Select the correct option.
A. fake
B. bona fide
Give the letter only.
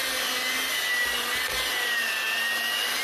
B